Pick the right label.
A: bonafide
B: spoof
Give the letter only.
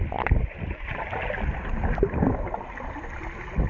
A